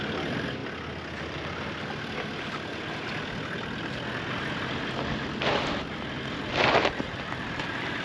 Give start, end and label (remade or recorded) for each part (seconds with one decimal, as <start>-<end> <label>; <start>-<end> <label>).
0.0-8.0 recorded